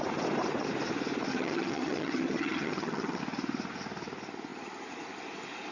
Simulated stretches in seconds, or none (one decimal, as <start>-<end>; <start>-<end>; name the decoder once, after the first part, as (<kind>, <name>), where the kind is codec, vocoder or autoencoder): 1.3-3.2 (vocoder, HiFi-GAN)

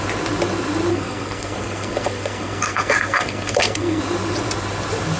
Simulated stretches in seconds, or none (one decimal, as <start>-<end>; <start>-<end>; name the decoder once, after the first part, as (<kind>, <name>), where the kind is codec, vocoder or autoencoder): 0.9-4.0 (codec, SNAC)

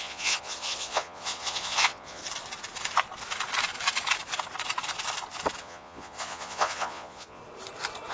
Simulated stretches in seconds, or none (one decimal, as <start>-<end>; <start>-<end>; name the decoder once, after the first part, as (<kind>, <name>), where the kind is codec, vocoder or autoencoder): 0.0-2.2 (vocoder, Vocos); 5.6-7.4

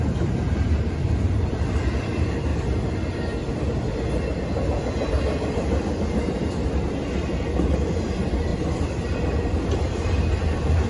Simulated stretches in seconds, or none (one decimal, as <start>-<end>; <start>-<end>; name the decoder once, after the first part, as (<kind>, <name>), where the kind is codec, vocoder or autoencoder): 0.0-2.5 (vocoder, BigVGAN v2); 5.1-10.9

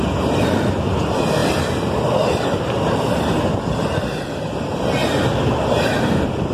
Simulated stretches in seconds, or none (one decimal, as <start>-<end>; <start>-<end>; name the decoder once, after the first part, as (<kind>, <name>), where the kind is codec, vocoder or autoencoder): 1.4-2.8 (vocoder, BigVGAN v2)

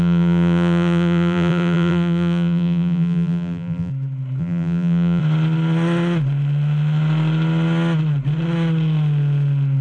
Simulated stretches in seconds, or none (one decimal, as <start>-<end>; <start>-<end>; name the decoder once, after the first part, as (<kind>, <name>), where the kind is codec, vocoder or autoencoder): 0.0-3.9 (vocoder, BigVGAN v2); 4.4-5.2

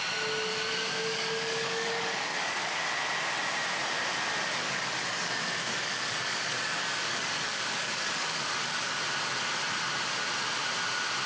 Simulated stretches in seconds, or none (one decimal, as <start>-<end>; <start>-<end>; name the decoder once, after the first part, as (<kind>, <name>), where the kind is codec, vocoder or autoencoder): 0.5-2.8 (codec, DAC); 4.6-9.0

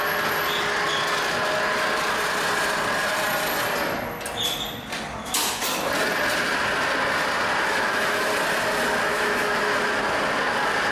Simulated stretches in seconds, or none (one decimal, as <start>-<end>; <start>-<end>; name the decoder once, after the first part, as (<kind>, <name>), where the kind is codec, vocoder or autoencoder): 7.7-8.3 (autoencoder, DAC-VAE); 9.1-9.8